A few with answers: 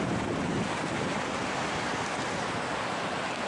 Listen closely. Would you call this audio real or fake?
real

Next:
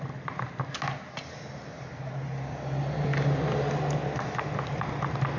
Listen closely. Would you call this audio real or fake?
real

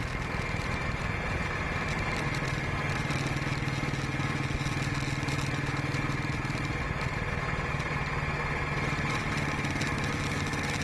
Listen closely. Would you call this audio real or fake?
real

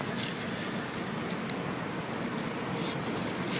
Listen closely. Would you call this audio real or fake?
real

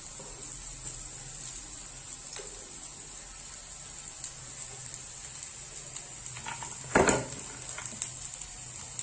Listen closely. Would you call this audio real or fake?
real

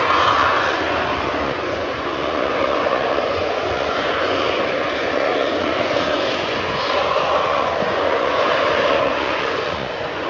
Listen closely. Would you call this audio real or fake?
fake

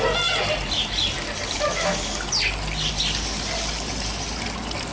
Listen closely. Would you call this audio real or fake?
real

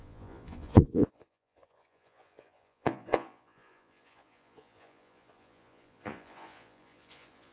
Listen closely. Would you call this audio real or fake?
fake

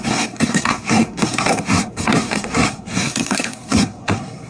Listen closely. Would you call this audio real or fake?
fake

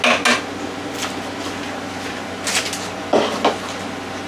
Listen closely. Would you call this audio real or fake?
real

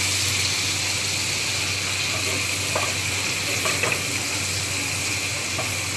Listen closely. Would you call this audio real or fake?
real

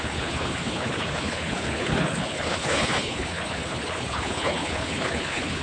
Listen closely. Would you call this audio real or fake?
fake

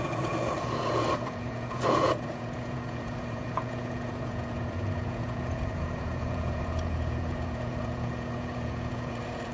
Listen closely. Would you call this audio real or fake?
fake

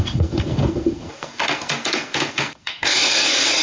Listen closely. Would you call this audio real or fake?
fake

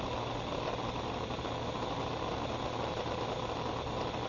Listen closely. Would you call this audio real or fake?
real